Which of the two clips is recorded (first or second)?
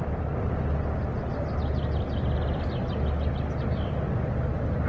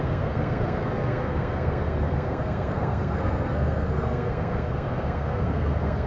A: first